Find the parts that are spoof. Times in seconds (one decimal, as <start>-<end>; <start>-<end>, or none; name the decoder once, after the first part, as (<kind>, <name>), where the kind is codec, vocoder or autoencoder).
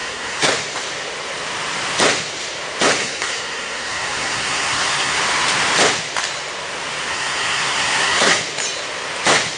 0.0-0.5 (codec, SNAC); 3.0-5.2; 7.1-8.4